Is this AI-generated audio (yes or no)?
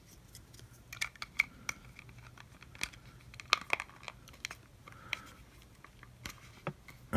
no